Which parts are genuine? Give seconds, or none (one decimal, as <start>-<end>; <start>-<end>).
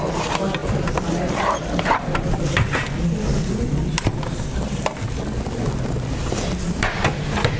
0.0-0.6; 2.4-7.6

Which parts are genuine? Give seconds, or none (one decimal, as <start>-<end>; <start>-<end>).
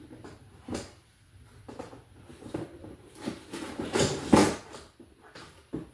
0.0-2.3; 3.4-5.9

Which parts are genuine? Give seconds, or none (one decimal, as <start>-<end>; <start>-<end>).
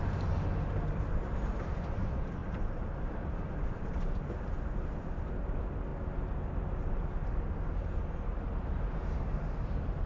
0.0-2.4; 5.2-10.1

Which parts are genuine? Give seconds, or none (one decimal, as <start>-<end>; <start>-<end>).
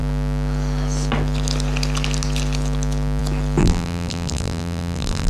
0.0-3.6